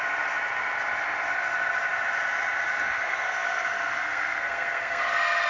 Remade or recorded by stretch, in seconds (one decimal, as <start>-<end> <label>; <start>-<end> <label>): 0.0-3.0 recorded; 3.0-5.5 remade